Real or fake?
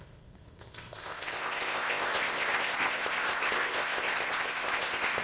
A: fake